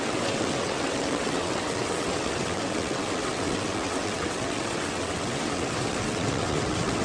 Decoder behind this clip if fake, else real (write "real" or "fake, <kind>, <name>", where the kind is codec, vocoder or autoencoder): fake, vocoder, WaveNeXt